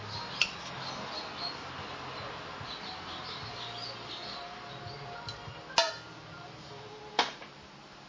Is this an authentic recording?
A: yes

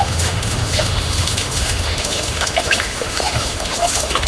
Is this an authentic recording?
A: no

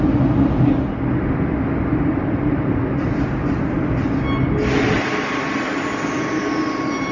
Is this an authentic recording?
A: yes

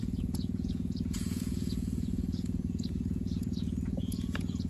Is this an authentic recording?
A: no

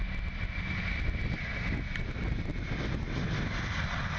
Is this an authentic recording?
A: yes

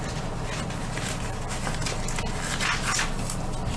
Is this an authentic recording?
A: yes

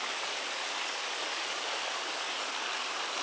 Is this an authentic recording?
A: no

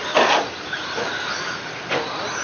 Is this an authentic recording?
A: yes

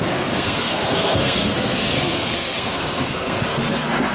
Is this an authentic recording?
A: no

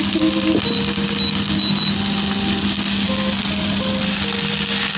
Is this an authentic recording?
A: yes